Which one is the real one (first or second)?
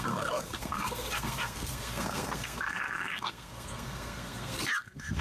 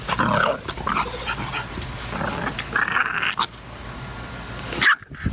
second